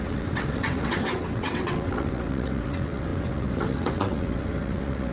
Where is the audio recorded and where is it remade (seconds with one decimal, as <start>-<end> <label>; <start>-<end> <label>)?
0.0-5.1 remade